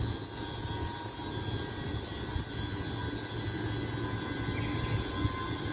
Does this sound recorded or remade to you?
recorded